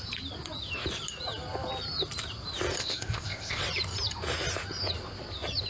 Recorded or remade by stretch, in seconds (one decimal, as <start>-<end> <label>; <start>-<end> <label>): 0.0-2.8 recorded; 2.8-3.6 remade; 3.6-5.7 recorded

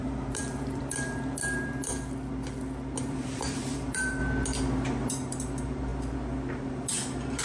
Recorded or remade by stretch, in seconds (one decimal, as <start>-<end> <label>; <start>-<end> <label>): 0.0-1.9 remade; 1.9-3.0 recorded; 3.0-4.2 remade; 4.2-5.1 recorded; 5.1-5.9 remade; 5.9-6.5 recorded; 6.5-7.4 remade

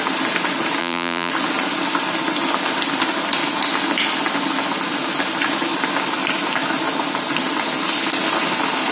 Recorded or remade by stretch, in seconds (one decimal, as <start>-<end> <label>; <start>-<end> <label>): 0.0-0.8 recorded; 0.8-1.3 remade; 1.3-8.9 recorded

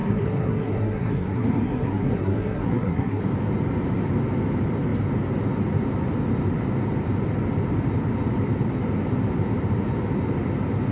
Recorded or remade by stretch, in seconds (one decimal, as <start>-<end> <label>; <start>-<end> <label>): 0.0-3.2 remade; 3.2-10.9 recorded

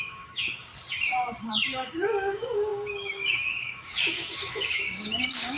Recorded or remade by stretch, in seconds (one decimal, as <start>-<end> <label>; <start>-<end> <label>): 0.0-0.7 remade; 0.7-1.5 recorded; 1.5-5.6 remade

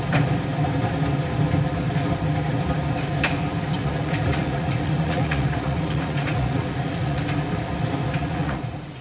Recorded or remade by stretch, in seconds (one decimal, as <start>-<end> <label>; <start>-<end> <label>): 0.0-3.8 recorded; 3.8-7.2 remade; 7.2-8.2 recorded; 8.2-9.0 remade

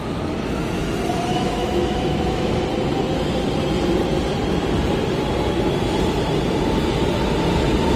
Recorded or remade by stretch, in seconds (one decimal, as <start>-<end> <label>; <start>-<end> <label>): 0.0-1.3 recorded; 1.3-2.6 remade; 2.6-8.0 recorded